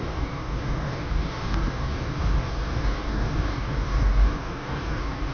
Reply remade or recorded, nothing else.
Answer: remade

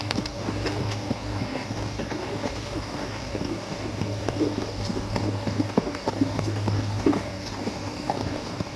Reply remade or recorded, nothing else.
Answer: remade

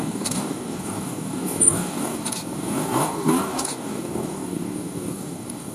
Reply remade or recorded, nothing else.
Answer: remade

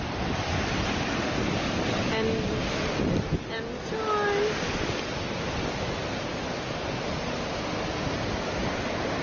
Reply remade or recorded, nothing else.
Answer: recorded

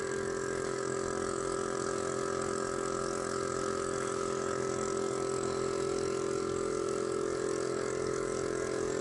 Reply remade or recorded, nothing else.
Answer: remade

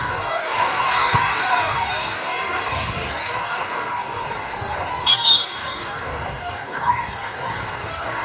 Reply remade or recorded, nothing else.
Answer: remade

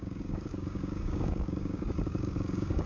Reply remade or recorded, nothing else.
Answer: remade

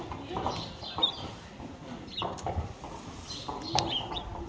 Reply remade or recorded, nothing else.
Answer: recorded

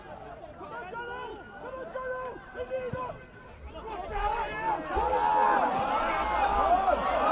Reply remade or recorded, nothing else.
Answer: recorded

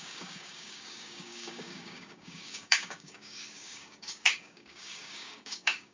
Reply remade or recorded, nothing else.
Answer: remade